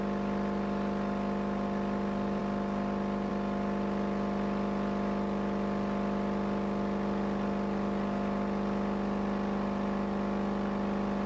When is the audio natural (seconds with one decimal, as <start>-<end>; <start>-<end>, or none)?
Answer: 0.0-11.3